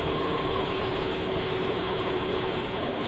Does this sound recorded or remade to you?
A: remade